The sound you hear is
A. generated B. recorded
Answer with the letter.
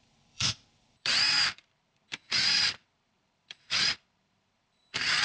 A